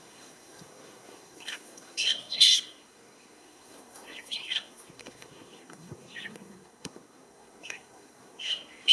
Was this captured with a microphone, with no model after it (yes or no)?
no